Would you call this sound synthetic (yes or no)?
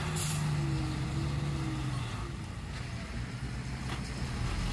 no